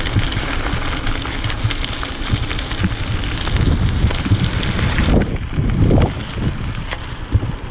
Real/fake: real